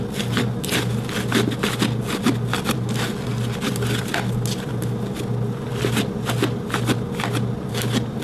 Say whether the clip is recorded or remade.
recorded